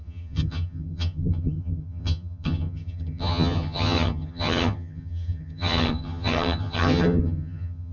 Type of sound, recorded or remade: remade